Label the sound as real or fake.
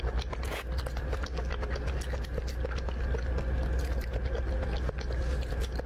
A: real